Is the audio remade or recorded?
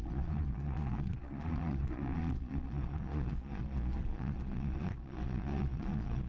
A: remade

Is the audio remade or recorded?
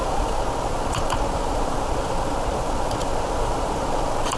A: remade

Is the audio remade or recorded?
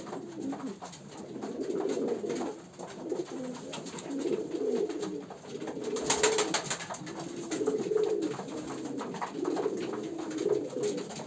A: recorded